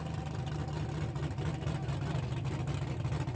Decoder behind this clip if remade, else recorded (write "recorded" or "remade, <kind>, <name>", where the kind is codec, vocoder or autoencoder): recorded